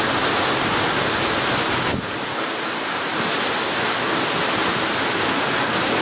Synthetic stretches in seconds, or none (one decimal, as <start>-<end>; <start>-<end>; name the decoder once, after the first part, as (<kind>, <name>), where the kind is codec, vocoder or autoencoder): none

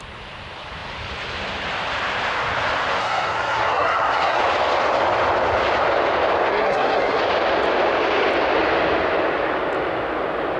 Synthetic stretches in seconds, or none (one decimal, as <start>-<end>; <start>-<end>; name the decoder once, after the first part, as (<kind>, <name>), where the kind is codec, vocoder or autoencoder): 3.0-4.4 (codec, SNAC); 6.5-7.2

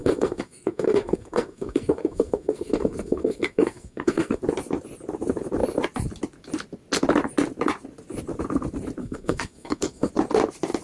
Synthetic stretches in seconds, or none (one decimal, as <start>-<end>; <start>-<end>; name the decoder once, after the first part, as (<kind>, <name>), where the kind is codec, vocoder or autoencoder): 0.0-4.4 (codec, SNAC); 9.0-10.1

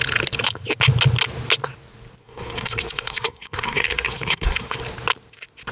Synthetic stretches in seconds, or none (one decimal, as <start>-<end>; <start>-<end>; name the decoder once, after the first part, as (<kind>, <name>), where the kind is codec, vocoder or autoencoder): 2.2-4.8 (codec, SNAC)

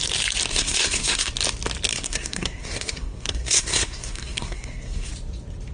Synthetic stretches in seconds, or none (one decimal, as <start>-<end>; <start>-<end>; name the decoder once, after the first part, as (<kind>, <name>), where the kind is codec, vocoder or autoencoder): 0.5-1.3 (codec, SNAC); 1.9-5.1

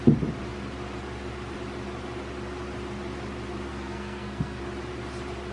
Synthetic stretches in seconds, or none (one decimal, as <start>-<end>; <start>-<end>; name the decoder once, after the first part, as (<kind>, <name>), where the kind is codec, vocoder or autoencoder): 3.7-4.6 (codec, SNAC)